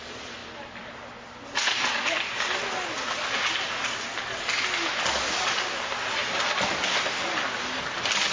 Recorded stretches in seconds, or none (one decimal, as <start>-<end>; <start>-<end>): 0.0-8.3